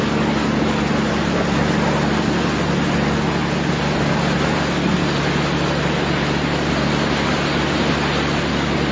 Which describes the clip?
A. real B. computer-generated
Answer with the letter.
A